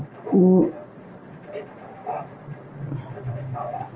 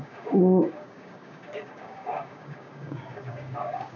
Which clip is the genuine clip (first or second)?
first